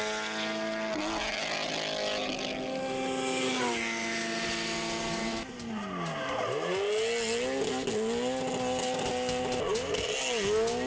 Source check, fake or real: real